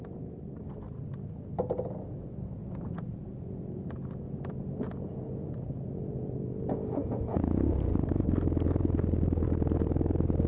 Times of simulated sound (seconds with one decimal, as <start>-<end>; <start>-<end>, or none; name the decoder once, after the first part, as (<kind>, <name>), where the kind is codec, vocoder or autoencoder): 2.6-7.4 (vocoder, Vocos)